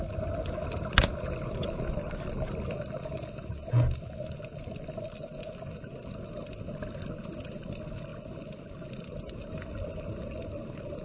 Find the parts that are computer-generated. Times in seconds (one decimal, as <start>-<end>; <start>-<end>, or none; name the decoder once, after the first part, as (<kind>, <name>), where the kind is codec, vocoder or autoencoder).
none